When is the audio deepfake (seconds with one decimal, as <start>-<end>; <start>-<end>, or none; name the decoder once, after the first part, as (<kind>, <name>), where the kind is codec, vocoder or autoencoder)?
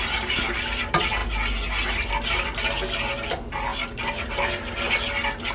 none